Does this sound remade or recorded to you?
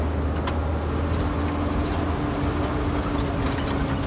recorded